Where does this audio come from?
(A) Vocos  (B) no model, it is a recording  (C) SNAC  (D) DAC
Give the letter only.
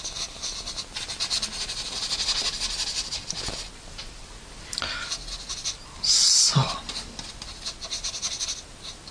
B